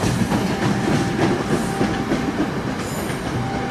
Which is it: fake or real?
real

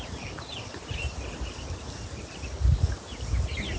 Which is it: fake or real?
real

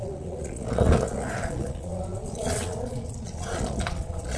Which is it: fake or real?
fake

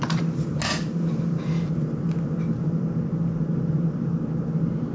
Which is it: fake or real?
real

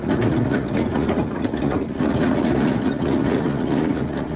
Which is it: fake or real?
fake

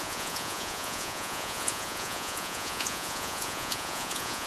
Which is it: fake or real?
fake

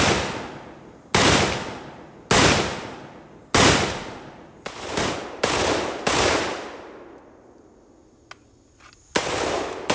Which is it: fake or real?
real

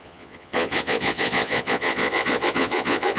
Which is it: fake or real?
fake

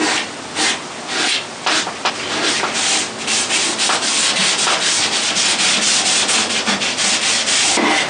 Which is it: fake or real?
real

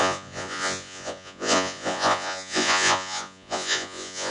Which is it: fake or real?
fake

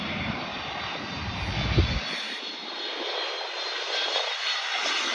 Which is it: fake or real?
real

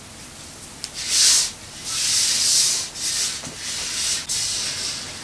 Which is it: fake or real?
real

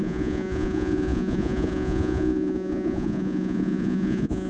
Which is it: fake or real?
fake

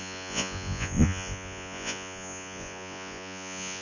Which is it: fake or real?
fake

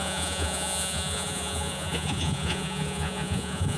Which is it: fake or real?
fake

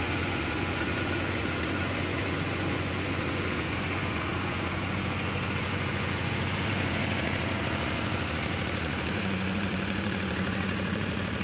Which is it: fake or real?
fake